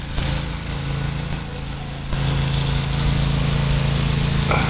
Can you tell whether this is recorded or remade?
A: recorded